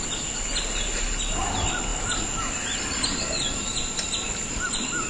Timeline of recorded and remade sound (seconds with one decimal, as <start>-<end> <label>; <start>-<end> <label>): 0.0-5.1 recorded